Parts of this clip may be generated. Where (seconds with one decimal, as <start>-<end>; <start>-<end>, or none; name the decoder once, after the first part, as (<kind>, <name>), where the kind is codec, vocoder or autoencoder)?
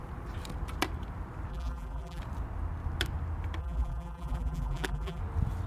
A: 1.5-2.2 (vocoder, BigVGAN v2); 3.6-5.2